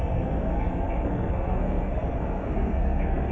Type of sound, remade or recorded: remade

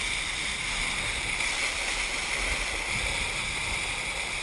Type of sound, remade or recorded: recorded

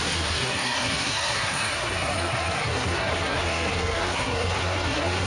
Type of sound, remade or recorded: remade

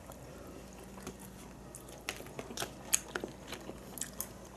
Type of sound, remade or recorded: recorded